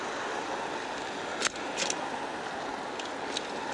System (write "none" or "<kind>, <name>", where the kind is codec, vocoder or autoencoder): none